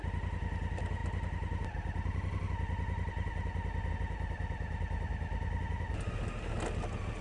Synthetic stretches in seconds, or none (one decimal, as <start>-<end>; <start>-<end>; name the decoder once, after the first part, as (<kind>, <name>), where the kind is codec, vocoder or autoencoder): none